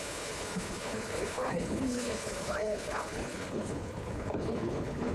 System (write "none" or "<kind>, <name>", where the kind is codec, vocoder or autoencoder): codec, HILCodec